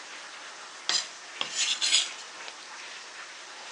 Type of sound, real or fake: real